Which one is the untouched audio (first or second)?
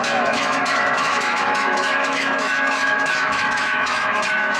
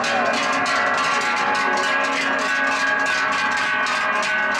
second